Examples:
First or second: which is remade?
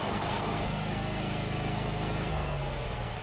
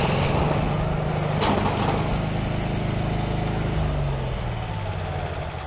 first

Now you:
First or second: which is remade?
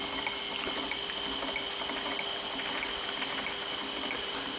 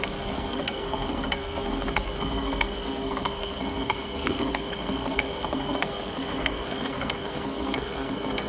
second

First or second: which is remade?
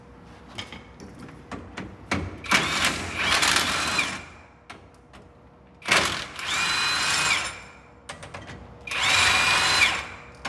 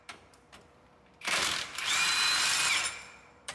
second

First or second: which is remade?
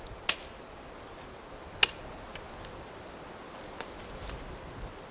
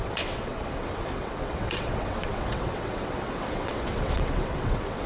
second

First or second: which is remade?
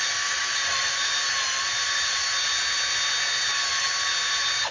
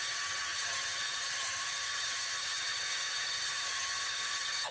second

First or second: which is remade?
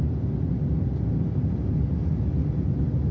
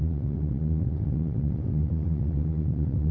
second